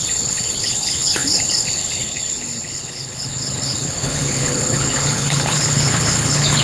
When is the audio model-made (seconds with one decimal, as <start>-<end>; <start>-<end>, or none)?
0.0-6.6